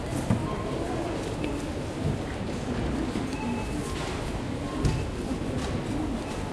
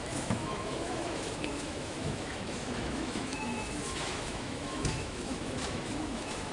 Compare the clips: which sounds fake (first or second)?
second